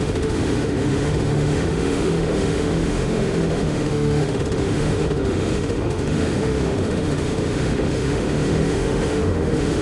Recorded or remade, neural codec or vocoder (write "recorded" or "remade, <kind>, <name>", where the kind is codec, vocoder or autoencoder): remade, autoencoder, DAC-VAE